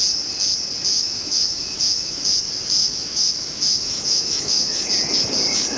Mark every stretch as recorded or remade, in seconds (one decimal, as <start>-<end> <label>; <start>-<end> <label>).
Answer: 0.0-0.9 recorded; 0.9-2.2 remade; 2.2-2.8 recorded; 2.8-4.9 remade; 4.9-5.8 recorded